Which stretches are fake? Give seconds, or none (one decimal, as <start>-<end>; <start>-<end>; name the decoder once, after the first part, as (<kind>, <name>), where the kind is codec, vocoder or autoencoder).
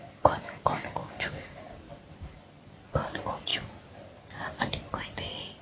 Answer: 1.0-1.6 (codec, DAC)